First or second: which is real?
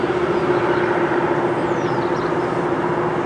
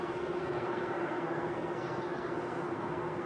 first